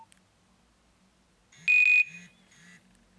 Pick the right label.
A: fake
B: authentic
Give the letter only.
B